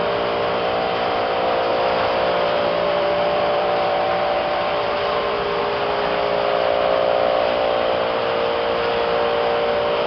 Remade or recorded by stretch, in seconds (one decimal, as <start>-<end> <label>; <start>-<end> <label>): 0.0-1.7 recorded; 1.7-5.6 remade; 5.6-10.1 recorded